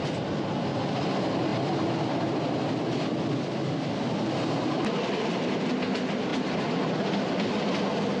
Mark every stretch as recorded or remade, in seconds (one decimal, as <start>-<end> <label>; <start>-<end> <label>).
0.0-8.2 recorded